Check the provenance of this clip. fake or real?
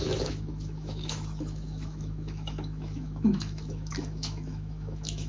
fake